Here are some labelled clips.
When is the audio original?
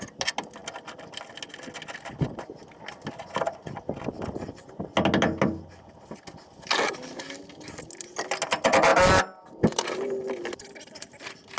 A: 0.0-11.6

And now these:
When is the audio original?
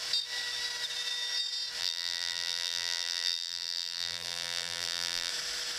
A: 0.0-1.8; 5.3-5.8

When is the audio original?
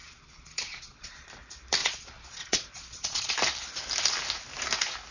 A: 1.3-1.8; 3.3-5.1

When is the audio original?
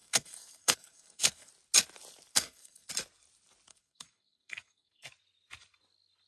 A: 1.5-2.3; 2.9-3.7; 5.1-6.3